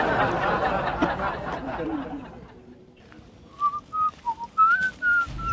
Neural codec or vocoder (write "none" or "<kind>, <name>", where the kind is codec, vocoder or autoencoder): none